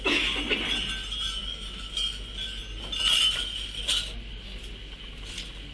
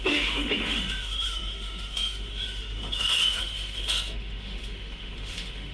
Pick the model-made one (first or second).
second